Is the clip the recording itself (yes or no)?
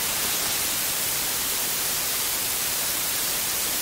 no